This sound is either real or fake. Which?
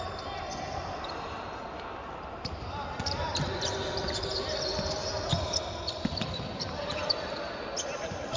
real